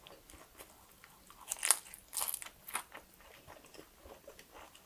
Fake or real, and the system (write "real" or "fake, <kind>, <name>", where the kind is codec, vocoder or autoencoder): real